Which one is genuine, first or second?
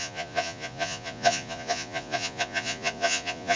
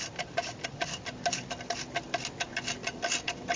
second